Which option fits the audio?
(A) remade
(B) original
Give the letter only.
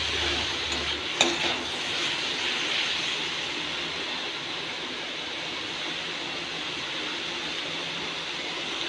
B